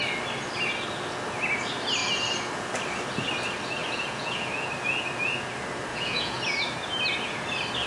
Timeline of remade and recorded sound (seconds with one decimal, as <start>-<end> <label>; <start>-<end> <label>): 0.0-3.8 recorded; 3.8-4.5 remade; 4.5-5.9 recorded; 5.9-6.4 remade; 6.4-7.9 recorded